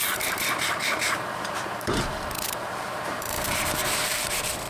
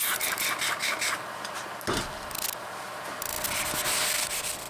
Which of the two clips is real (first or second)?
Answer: second